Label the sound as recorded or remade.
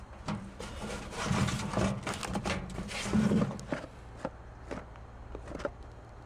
recorded